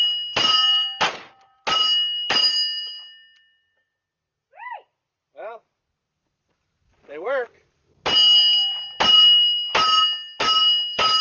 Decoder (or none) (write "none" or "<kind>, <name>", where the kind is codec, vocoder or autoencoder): none